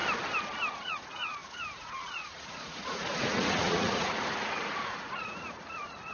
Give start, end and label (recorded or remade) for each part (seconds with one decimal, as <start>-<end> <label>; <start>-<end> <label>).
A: 0.0-0.7 recorded; 0.7-6.1 remade